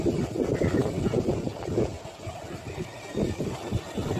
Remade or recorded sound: recorded